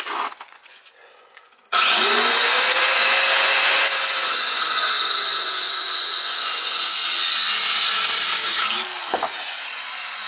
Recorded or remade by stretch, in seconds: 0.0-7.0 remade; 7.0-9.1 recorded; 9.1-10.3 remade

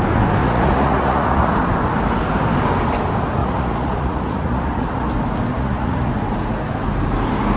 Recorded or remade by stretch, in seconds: 0.0-0.4 recorded; 0.4-1.5 remade; 1.5-3.4 recorded; 3.4-5.1 remade; 5.1-5.5 recorded; 5.5-6.1 remade; 6.1-7.6 recorded